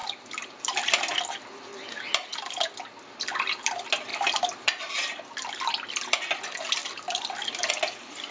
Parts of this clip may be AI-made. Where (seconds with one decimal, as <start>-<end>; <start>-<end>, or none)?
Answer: 0.0-0.9; 4.1-5.6; 6.8-7.7